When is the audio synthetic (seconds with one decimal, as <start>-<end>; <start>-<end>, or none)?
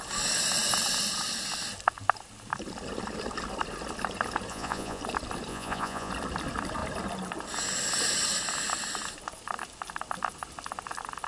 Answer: 4.5-5.0; 5.5-6.1